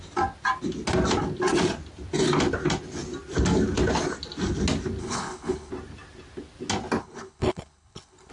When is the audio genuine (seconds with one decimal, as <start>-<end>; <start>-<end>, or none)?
0.0-5.0; 5.7-7.0